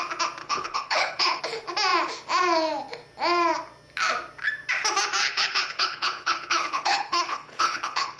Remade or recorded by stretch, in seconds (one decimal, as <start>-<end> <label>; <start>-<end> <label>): 0.0-0.4 recorded; 0.4-1.4 remade; 1.4-5.2 recorded; 5.2-8.2 remade